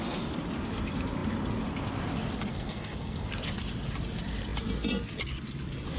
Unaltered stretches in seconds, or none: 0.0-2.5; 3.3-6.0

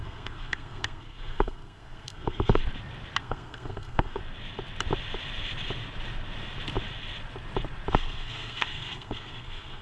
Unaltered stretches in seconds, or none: 2.6-3.2; 4.2-7.9

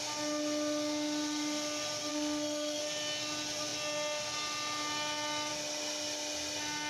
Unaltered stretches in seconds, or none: 0.0-2.1; 2.8-6.9

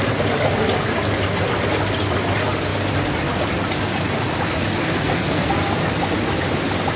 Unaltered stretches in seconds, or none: 0.0-4.8; 5.5-7.0

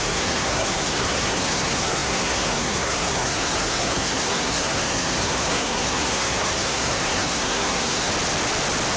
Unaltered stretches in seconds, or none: 8.1-9.0

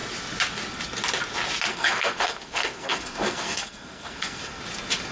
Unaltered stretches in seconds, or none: 0.0-1.7; 4.6-5.1

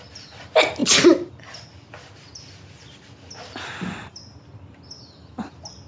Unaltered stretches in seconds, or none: 0.0-5.9

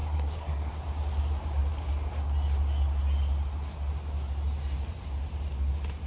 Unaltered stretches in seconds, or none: 0.7-6.1